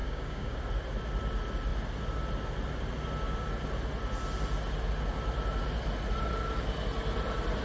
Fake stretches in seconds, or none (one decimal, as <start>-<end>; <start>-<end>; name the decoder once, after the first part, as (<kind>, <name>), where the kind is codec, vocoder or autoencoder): 0.0-0.6 (codec, DAC)